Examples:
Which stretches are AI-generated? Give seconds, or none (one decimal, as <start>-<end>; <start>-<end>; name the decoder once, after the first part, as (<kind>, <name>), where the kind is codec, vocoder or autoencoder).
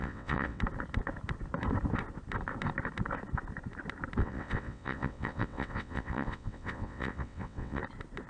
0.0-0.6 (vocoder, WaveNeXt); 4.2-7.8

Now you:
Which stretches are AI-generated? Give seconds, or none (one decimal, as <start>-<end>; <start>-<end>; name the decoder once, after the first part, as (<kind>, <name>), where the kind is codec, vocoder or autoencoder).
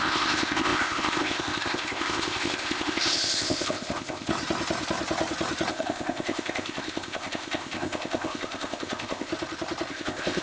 0.0-4.3 (codec, ZipCodec); 5.7-9.3; 9.9-10.4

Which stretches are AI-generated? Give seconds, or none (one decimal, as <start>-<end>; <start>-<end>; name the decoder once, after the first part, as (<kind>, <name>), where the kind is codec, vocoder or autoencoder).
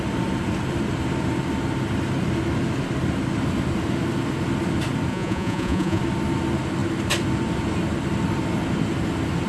5.1-6.0 (vocoder, Vocos)